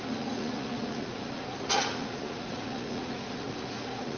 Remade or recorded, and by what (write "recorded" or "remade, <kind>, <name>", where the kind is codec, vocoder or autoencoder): remade, vocoder, Vocos